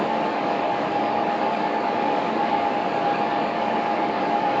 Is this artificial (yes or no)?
yes